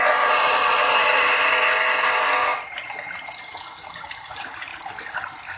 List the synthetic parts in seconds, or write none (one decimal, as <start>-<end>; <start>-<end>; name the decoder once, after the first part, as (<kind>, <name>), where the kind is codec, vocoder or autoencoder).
0.0-1.4 (vocoder, BigVGAN v2); 3.8-4.7